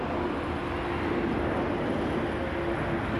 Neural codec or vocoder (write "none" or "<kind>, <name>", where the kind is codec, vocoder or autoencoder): none